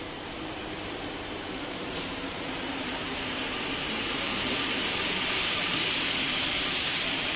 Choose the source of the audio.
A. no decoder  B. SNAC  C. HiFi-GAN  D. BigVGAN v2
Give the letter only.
D